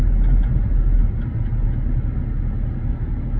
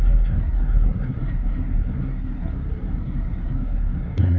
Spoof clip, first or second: second